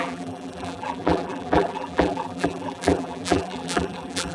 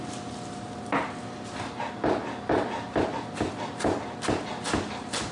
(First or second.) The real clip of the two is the second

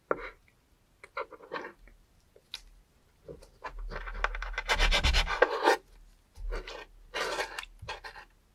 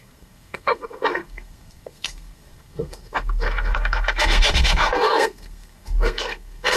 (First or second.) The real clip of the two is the first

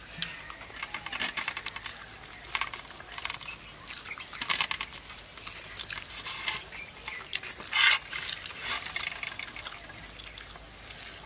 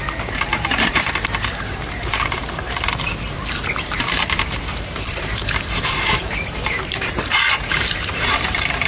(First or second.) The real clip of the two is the first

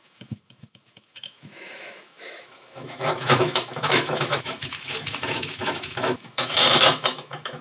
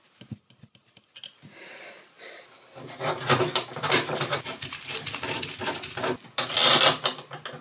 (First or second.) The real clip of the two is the second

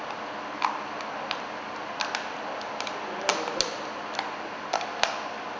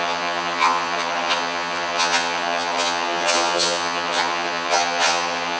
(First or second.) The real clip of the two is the first